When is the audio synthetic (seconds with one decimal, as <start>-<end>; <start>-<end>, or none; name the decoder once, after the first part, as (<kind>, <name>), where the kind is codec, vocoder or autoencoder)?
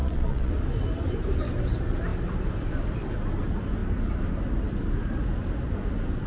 0.0-0.5 (vocoder, Vocos)